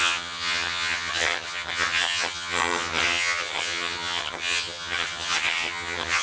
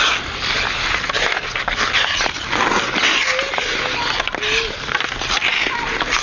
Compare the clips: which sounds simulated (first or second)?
first